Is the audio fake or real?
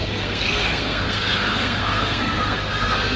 fake